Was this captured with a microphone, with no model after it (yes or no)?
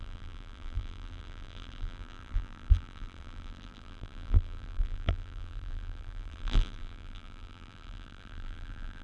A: no